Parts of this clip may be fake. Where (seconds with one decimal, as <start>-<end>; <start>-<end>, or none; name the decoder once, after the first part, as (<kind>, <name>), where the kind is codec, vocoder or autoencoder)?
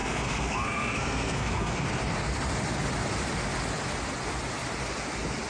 0.0-1.8 (codec, SNAC)